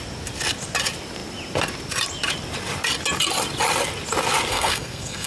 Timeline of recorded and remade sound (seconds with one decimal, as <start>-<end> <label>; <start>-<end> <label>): 0.0-4.5 recorded; 4.5-5.3 remade

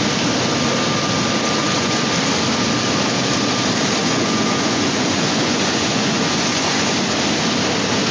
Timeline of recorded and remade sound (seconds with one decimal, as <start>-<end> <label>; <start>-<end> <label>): 0.0-1.6 recorded; 1.6-2.1 remade; 2.1-4.0 recorded; 4.0-6.9 remade; 6.9-8.1 recorded

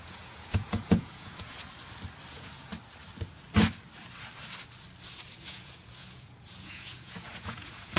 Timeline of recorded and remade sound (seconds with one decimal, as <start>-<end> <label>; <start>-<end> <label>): 0.0-1.5 remade; 1.5-2.3 recorded; 2.3-2.7 remade; 2.7-5.3 recorded; 5.3-8.0 remade